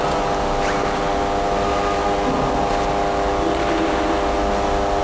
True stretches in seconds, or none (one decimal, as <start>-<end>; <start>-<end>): 0.0-5.0